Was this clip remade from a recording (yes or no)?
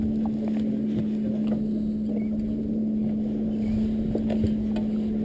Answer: no